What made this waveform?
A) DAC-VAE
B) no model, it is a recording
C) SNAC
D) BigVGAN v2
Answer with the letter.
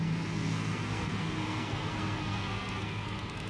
C